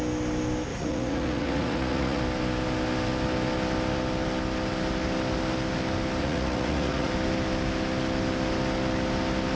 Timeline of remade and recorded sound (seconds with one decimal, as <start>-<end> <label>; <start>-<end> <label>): 0.0-0.7 recorded; 0.7-2.2 remade; 2.2-6.2 recorded; 6.2-7.1 remade; 7.1-9.6 recorded